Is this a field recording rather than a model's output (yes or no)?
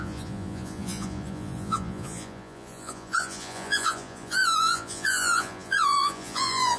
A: no